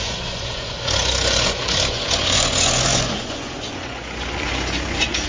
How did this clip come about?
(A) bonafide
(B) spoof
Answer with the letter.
B